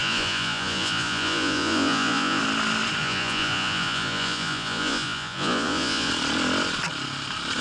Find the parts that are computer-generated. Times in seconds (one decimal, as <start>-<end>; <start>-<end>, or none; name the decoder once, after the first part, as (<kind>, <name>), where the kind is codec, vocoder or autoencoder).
0.0-2.4 (vocoder, Vocos); 3.0-6.1